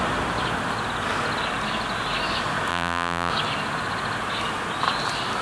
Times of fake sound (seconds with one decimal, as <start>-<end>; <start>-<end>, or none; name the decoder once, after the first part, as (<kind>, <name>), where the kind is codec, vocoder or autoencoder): 2.7-3.3 (vocoder, BigVGAN v2)